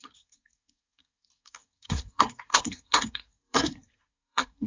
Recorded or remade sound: remade